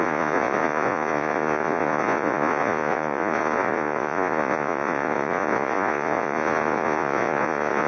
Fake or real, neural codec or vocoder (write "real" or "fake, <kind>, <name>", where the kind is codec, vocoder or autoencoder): fake, vocoder, Vocos